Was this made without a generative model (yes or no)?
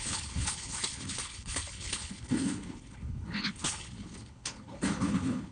no